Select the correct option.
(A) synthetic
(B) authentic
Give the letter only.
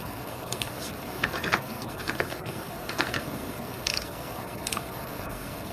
A